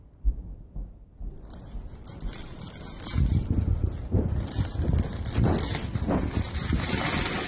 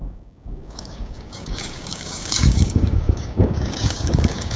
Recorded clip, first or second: first